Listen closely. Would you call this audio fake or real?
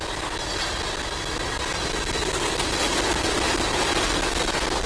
real